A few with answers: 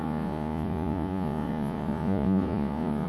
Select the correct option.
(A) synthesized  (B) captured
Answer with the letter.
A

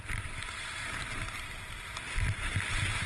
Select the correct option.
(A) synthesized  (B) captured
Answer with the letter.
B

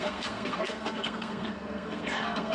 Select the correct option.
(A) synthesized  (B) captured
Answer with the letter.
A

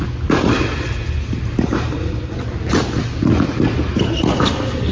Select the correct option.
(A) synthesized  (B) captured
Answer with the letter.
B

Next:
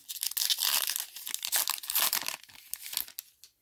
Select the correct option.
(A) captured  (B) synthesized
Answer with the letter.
A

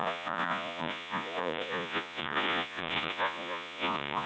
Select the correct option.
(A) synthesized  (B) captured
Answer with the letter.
A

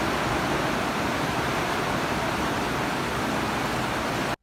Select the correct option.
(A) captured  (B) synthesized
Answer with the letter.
A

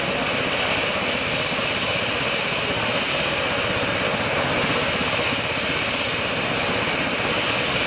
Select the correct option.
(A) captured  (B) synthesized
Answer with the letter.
A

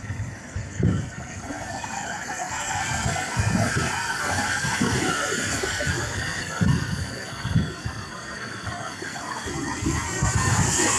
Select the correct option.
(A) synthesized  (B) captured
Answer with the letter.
A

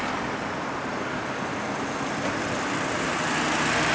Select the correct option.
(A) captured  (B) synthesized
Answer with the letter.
A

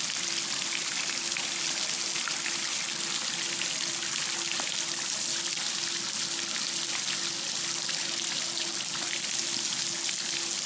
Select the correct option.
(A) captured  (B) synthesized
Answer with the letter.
A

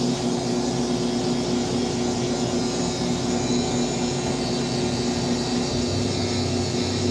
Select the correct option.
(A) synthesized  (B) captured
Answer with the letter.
B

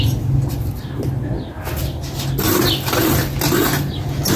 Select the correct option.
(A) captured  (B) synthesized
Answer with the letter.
A